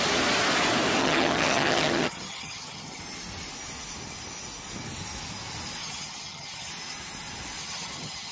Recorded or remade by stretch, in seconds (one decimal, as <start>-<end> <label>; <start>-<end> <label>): 0.0-1.0 recorded; 1.0-3.0 remade; 3.0-5.8 recorded; 5.8-6.7 remade; 6.7-7.6 recorded; 7.6-8.3 remade